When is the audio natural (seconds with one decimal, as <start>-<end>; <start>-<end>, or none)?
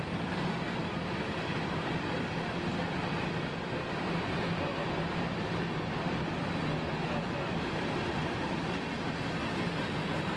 0.0-10.4